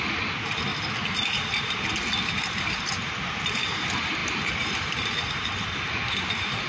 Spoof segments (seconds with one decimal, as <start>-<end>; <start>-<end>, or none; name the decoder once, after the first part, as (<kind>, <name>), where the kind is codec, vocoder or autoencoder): 0.0-0.7 (vocoder, BigVGAN v2); 2.6-6.7